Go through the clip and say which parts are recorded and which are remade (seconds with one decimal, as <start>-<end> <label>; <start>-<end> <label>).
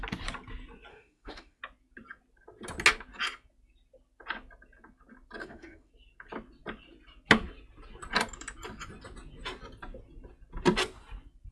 0.0-0.9 recorded; 0.9-1.6 remade; 1.6-5.4 recorded; 5.4-5.9 remade; 5.9-11.5 recorded